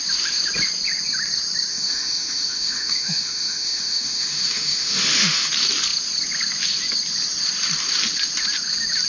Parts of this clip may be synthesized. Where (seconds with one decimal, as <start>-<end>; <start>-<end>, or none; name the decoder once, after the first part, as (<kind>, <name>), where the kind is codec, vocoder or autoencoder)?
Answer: 1.7-5.5 (autoencoder, DAC-VAE)